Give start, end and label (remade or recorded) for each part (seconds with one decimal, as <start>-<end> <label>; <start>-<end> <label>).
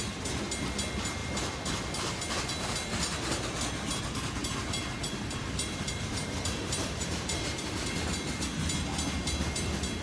0.0-4.4 recorded; 4.4-7.9 remade; 7.9-10.0 recorded